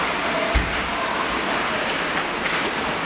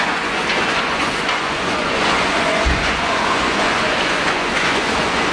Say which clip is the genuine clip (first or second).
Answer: first